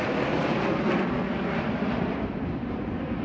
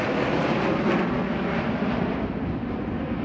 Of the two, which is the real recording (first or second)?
second